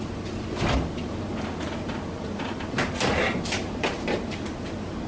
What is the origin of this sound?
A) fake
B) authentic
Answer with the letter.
B